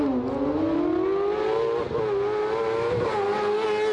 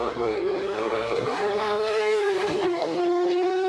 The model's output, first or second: second